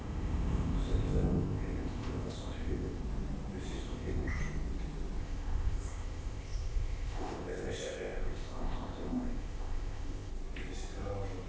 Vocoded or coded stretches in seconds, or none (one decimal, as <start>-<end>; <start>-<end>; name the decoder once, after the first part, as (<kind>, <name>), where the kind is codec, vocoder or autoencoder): 0.0-3.0 (codec, ZipCodec); 3.8-4.4; 5.2-10.3